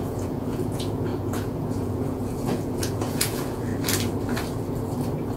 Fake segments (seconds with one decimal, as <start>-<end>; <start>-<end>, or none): 0.0-3.7